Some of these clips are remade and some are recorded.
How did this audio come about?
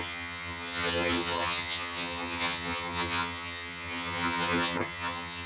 remade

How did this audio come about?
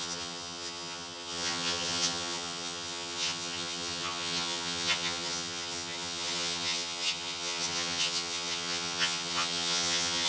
remade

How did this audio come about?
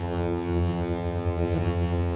remade